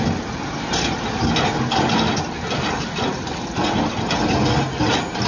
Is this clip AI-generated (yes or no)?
no